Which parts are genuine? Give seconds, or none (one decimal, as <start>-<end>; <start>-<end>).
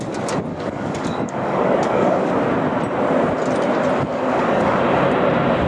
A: 0.0-0.5; 2.3-4.1; 4.8-5.7